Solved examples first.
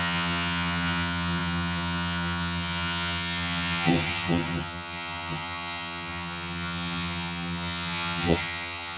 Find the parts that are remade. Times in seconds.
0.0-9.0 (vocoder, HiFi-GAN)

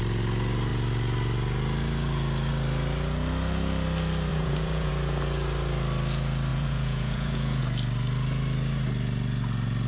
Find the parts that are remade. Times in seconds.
4.3-4.9 (vocoder, Vocos); 6.5-7.6

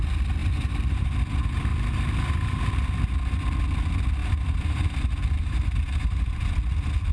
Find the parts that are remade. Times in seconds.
0.4-1.1 (vocoder, BigVGAN v2); 4.2-6.5